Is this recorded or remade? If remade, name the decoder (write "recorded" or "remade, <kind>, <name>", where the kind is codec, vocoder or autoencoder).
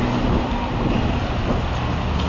recorded